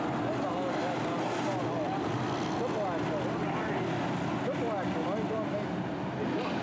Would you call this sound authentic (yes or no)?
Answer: yes